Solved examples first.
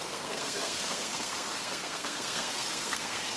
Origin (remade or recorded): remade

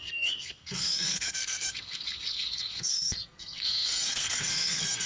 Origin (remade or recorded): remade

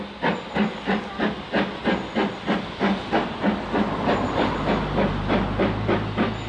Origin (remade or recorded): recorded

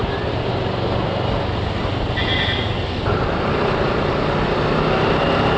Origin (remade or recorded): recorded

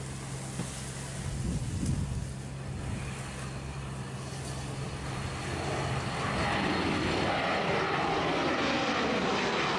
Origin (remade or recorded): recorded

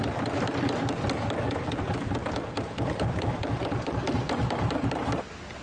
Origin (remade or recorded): recorded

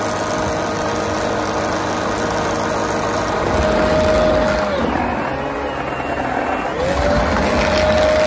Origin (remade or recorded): recorded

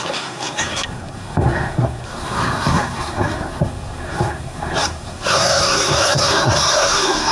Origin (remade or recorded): remade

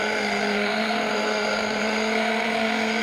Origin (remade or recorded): remade